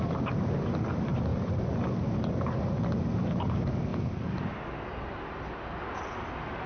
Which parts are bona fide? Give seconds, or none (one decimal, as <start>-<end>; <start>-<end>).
0.0-6.7